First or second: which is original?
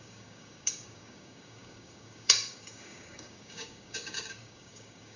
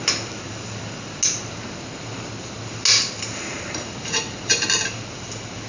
second